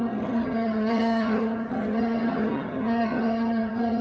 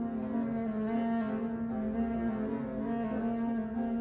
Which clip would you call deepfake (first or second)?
first